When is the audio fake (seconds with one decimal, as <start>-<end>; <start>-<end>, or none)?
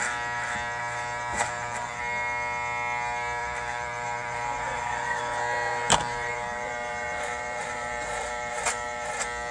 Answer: 1.3-2.0; 3.4-5.2; 5.7-9.1